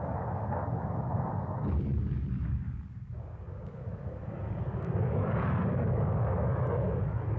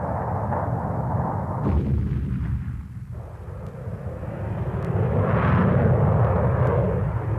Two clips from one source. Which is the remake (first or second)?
first